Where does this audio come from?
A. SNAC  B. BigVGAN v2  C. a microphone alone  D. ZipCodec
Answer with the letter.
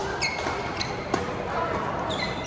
C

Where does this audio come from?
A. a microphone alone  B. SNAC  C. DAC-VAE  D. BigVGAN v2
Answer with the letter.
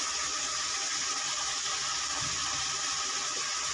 A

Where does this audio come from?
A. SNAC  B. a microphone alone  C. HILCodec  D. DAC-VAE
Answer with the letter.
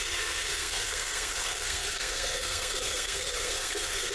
A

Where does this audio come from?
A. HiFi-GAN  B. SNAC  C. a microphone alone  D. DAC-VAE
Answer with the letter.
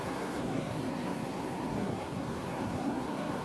B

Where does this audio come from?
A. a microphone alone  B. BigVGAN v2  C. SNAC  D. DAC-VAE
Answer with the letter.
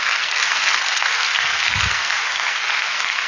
C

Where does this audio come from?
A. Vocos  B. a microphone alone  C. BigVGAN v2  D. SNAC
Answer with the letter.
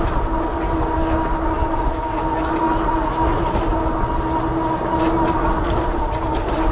B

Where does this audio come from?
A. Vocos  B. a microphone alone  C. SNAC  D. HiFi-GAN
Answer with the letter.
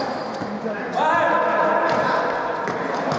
B